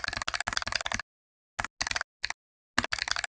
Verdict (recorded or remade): recorded